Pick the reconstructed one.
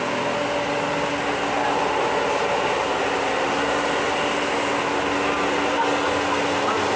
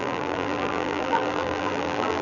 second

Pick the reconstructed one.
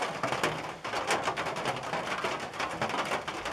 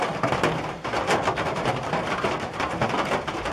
second